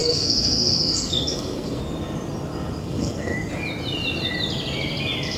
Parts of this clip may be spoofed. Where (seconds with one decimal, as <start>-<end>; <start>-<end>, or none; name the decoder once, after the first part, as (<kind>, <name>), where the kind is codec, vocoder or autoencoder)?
0.0-1.8 (codec, SNAC); 2.8-3.5